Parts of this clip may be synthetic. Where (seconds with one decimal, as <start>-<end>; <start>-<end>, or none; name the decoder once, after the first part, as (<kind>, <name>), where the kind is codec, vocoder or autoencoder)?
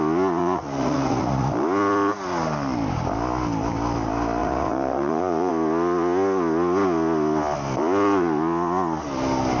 0.4-1.5 (vocoder, Vocos); 4.4-5.5